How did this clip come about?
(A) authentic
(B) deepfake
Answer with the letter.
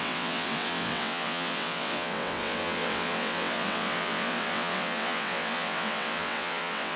B